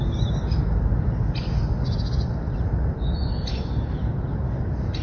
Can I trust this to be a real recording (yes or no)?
yes